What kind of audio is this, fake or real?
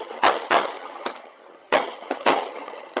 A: fake